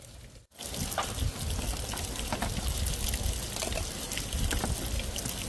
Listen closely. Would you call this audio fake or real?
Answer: real